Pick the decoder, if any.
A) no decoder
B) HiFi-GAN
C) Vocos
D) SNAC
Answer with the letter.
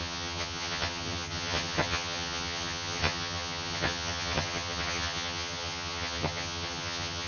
B